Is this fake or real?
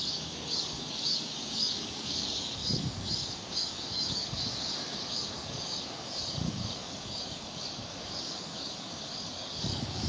fake